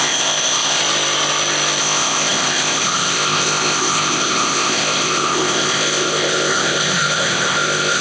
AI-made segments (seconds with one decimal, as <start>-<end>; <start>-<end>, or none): 0.0-0.8; 1.8-8.0